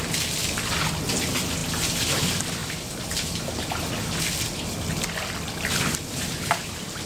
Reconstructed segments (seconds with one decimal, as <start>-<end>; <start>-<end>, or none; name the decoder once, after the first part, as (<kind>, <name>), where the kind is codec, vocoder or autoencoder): none